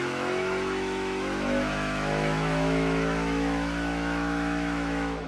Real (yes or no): no